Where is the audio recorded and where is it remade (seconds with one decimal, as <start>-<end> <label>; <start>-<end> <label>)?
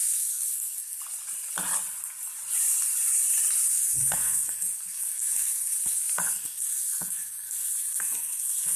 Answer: 0.0-1.0 remade; 1.0-3.7 recorded; 3.7-8.8 remade